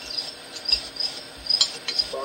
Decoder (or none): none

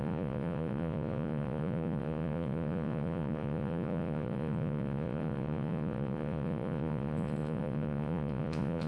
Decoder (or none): vocoder, Vocos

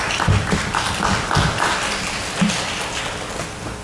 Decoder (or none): none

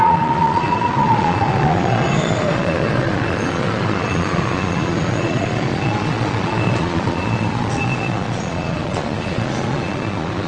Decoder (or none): vocoder, Vocos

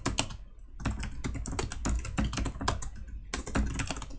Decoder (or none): none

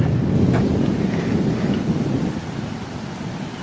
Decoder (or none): none